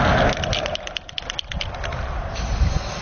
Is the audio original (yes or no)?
yes